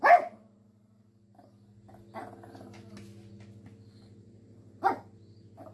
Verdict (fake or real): real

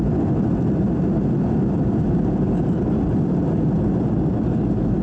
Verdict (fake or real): real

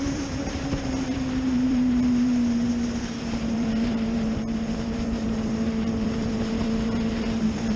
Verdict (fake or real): fake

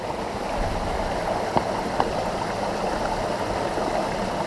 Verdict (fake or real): real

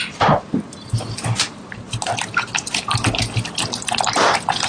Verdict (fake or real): real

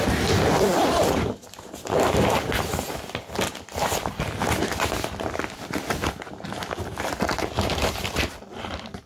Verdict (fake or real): real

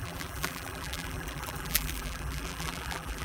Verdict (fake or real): fake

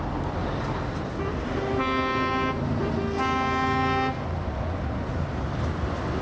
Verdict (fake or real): real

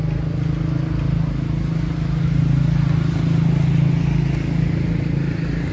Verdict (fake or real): real